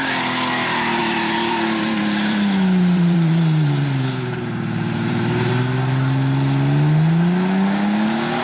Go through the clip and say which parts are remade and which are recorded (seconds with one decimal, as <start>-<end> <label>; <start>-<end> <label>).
0.0-1.0 recorded; 1.0-5.5 remade; 5.5-8.4 recorded